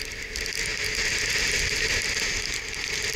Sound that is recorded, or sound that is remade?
recorded